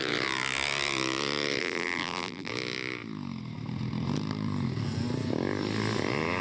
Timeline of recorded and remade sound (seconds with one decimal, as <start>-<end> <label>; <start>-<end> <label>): 0.0-1.6 recorded; 1.6-2.5 remade; 2.5-6.4 recorded